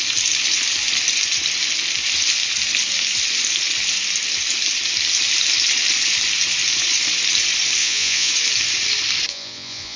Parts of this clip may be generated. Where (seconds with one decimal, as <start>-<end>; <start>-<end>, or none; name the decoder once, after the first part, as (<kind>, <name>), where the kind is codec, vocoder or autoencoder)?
7.8-8.3 (vocoder, Vocos); 9.3-10.0